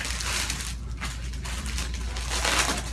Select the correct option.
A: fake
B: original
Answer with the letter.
B